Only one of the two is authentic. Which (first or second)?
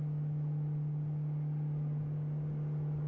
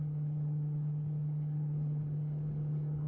first